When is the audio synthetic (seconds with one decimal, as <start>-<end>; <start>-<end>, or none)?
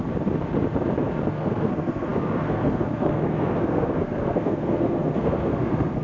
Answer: 1.3-6.0